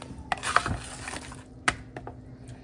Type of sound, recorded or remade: recorded